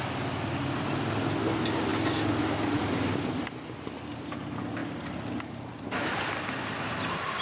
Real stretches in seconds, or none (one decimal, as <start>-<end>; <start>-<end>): 0.0-7.4